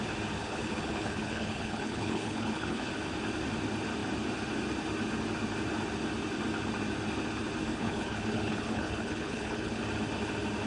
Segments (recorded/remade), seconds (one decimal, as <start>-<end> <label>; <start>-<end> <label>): 0.0-0.4 recorded; 0.4-2.9 remade; 2.9-7.7 recorded; 7.7-9.8 remade; 9.8-10.7 recorded